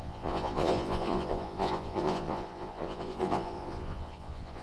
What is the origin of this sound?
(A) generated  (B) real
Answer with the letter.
A